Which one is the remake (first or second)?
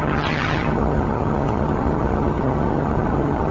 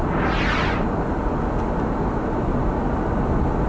first